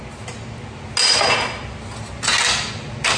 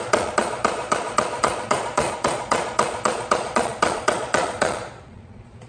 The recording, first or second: first